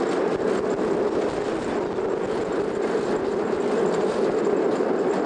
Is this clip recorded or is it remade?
recorded